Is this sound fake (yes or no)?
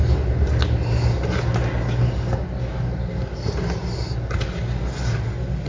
no